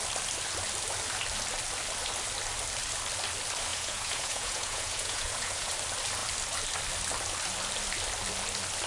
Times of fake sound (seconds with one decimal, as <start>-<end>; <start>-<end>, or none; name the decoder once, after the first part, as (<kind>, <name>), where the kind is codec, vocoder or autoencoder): 3.7-5.7 (vocoder, Vocos)